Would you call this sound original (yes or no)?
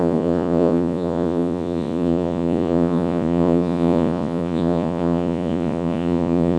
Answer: no